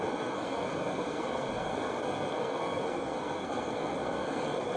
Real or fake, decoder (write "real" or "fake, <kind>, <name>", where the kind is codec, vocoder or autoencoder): fake, codec, SNAC